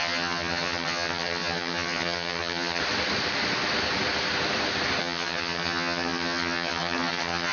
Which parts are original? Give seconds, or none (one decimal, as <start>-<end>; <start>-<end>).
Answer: 2.8-5.0